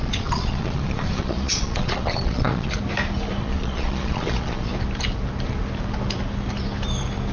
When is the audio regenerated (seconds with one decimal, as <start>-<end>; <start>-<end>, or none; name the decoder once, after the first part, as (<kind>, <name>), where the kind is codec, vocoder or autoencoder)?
0.0-2.8 (vocoder, Vocos); 3.4-4.7

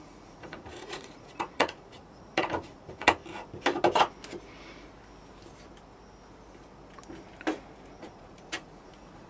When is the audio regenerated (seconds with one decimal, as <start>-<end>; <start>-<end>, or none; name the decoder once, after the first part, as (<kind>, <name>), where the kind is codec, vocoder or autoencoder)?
0.0-3.2 (vocoder, Vocos); 8.0-9.3

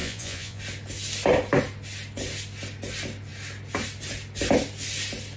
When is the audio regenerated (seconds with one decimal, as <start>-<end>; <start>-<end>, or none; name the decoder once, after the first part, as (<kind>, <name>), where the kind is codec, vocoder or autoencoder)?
0.0-0.6 (vocoder, Vocos)

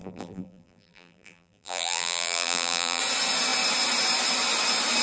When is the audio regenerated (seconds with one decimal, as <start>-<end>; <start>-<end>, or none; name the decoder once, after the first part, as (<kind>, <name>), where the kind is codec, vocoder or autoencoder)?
0.0-3.0 (vocoder, BigVGAN v2)

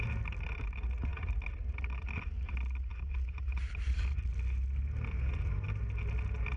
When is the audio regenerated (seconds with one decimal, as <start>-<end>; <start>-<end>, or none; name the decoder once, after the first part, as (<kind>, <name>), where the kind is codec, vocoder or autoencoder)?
none

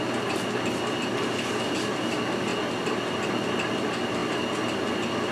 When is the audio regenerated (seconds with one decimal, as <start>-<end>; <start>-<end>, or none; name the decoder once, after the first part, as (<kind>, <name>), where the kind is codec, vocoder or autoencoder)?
none

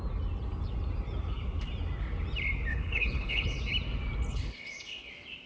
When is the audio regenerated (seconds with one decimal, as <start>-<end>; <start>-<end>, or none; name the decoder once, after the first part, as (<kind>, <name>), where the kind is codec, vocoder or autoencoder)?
2.7-3.6 (codec, HILCodec); 4.3-5.1

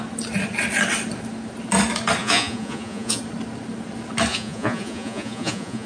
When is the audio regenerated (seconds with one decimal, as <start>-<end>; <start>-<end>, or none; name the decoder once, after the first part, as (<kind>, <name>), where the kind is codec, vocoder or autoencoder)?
2.2-3.2 (vocoder, Vocos); 4.3-5.9